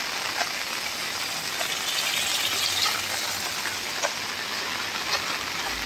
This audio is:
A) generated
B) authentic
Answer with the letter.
B